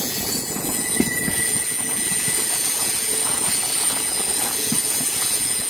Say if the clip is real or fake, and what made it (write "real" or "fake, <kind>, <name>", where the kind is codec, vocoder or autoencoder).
fake, vocoder, Vocos